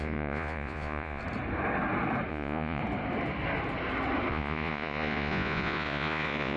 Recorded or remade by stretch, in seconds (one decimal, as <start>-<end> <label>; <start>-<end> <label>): 0.0-1.2 remade; 1.2-2.3 recorded; 2.3-2.8 remade; 2.8-4.3 recorded; 4.3-6.6 remade